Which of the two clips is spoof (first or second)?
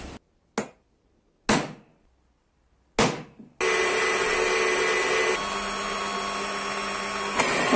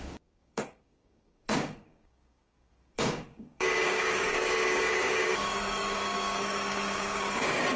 second